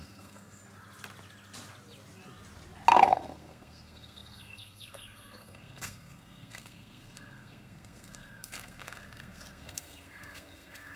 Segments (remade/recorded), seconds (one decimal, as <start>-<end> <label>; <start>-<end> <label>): 0.0-0.6 remade; 0.6-2.9 recorded; 2.9-11.0 remade